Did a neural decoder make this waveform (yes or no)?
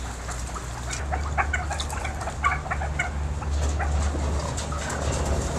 no